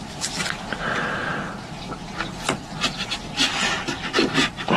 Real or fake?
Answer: real